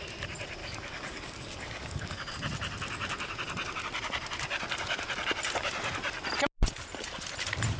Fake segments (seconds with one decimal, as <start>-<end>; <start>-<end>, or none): 0.6-2.3